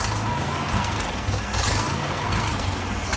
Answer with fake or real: fake